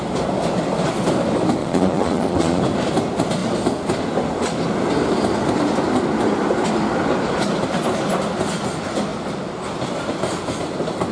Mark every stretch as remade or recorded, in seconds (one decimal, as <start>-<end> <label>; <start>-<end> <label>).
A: 0.0-1.6 recorded; 1.6-2.6 remade; 2.6-11.1 recorded